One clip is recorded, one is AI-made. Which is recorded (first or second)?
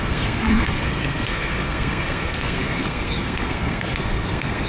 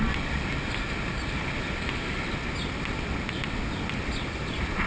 second